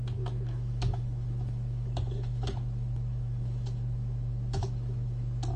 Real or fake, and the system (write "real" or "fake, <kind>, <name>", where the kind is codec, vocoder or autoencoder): fake, autoencoder, DAC-VAE